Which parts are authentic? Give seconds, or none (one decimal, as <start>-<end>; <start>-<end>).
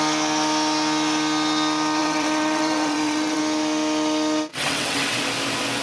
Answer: 0.0-2.0; 3.4-4.5; 5.2-5.8